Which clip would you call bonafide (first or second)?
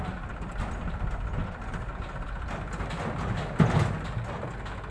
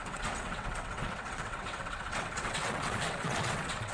first